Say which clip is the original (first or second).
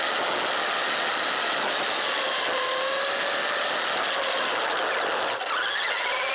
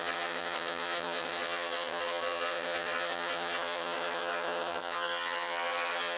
first